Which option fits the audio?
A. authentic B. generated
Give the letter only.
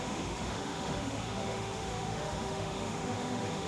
B